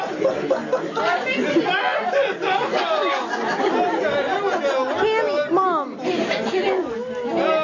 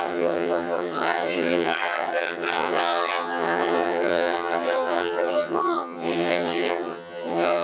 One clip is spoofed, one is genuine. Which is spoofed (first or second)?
second